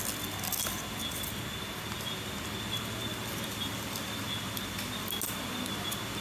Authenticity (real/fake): real